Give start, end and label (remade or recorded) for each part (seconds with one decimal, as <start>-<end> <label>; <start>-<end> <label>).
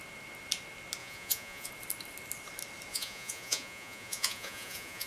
0.0-1.0 recorded; 1.0-1.7 remade; 1.7-2.9 recorded; 2.9-5.1 remade